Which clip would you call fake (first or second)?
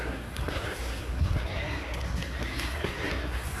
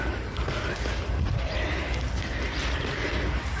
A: first